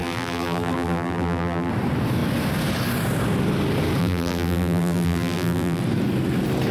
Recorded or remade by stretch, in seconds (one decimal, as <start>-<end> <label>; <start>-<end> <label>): 0.0-1.7 remade; 1.7-4.0 recorded; 4.0-5.8 remade; 5.8-6.7 recorded